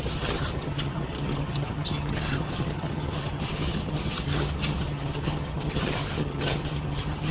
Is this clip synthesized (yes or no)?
yes